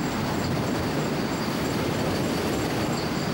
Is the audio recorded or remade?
recorded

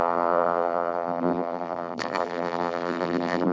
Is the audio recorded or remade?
remade